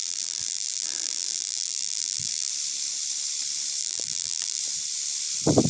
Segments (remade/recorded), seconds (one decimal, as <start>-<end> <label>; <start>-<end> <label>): 0.0-2.5 remade; 2.5-3.8 recorded; 3.8-4.6 remade; 4.6-5.7 recorded